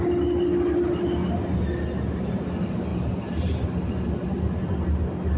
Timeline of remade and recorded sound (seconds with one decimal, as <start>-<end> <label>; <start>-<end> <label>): 0.0-2.9 recorded; 2.9-4.4 remade; 4.4-5.4 recorded

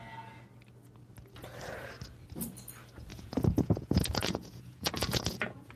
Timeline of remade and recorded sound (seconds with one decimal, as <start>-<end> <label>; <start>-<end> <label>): 0.0-3.1 recorded; 3.1-5.8 remade

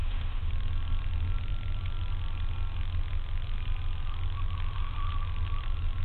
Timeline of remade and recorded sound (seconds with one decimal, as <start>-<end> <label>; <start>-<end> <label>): 0.0-0.5 remade; 0.5-6.0 recorded

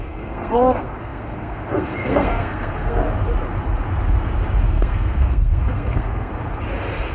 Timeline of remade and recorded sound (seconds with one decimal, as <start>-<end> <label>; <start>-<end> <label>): 0.0-3.0 remade; 3.0-4.6 recorded; 4.6-6.3 remade; 6.3-7.1 recorded